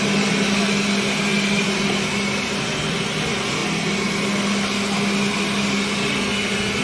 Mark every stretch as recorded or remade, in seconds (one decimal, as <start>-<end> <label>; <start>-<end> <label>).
0.0-6.8 recorded